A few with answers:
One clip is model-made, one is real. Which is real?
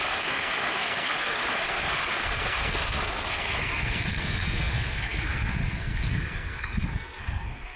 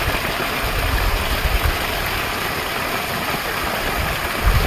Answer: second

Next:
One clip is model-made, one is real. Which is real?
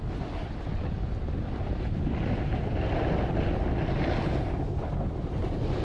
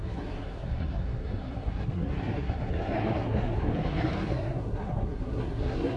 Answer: first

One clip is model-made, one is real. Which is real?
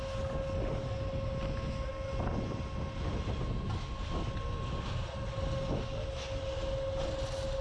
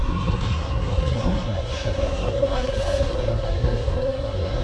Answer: first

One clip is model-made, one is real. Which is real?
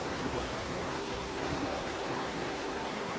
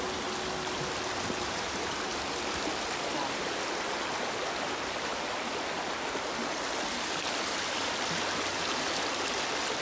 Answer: second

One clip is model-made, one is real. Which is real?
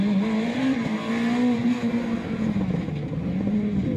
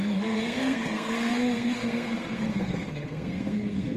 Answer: first